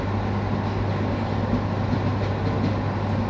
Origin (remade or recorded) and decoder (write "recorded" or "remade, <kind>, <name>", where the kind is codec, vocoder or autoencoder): recorded